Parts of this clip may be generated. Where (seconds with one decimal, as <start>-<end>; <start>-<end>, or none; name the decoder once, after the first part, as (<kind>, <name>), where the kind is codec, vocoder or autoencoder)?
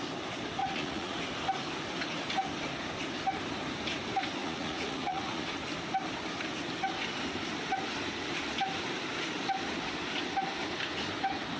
0.6-1.2 (vocoder, Vocos); 4.4-5.5